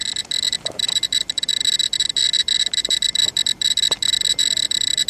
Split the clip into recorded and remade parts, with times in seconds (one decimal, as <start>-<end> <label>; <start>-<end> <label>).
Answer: 0.0-5.1 recorded